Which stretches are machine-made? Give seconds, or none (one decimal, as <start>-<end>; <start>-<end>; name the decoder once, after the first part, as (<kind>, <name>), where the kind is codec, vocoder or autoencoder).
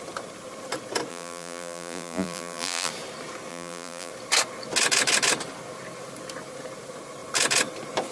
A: 1.1-2.9 (vocoder, BigVGAN v2); 3.5-4.1